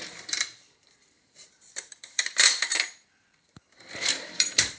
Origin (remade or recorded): remade